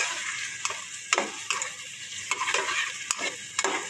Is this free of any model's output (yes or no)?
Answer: yes